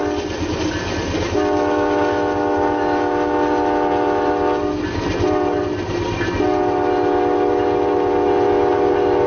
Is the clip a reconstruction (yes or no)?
no